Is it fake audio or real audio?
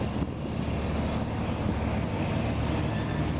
real